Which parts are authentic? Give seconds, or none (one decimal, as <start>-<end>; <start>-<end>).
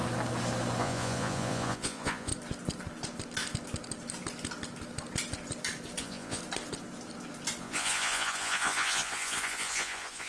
0.0-0.8; 2.3-6.0; 6.4-7.6